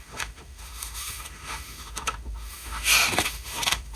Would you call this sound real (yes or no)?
no